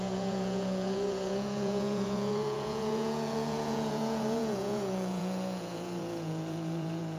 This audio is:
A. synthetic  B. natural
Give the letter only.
A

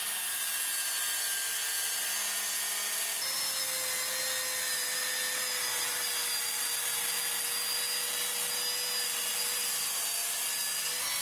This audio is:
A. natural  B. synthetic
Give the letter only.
A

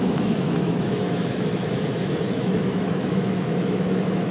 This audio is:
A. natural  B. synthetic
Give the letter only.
B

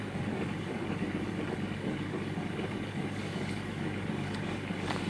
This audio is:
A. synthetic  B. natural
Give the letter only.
A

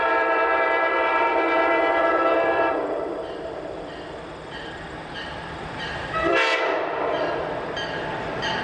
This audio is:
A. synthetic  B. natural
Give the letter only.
A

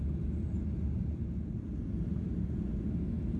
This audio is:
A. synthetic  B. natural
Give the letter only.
B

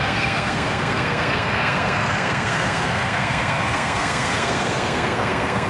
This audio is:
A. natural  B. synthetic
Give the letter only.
B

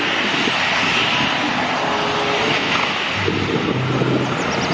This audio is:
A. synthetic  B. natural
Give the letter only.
B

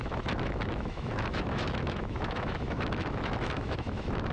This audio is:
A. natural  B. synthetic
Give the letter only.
B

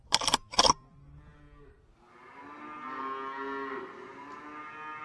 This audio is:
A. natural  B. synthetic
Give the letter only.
A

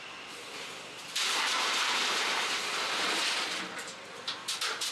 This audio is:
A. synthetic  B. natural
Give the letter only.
A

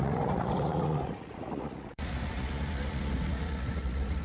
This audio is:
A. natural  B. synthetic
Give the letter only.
B